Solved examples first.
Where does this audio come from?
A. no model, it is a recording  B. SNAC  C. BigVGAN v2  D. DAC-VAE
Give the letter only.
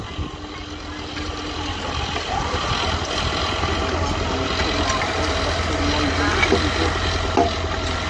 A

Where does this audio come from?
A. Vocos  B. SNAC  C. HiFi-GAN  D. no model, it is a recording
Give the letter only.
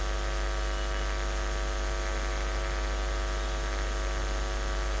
D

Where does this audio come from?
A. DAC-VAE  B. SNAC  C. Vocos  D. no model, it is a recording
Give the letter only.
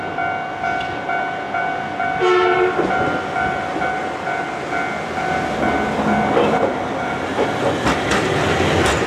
D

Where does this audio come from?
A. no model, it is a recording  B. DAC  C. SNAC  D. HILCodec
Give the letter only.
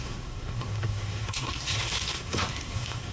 C